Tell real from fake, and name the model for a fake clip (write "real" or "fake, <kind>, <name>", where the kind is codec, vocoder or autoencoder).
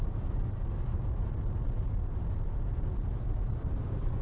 real